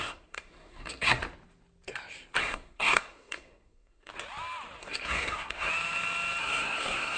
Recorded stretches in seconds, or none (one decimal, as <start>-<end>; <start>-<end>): 1.2-2.4; 4.1-4.8; 5.7-6.4